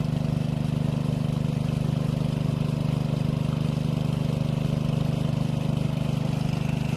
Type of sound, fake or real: real